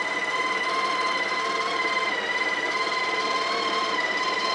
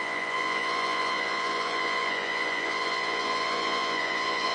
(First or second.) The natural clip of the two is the first